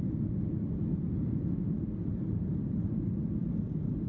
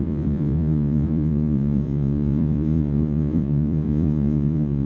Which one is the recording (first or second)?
first